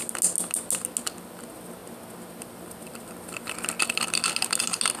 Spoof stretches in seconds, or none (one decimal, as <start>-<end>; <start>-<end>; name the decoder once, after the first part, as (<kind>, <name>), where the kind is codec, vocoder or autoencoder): none